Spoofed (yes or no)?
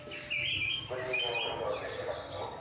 no